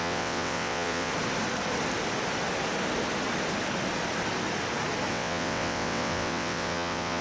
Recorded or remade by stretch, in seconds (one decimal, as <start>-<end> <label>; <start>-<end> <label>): 0.0-1.1 remade; 1.1-5.1 recorded; 5.1-7.2 remade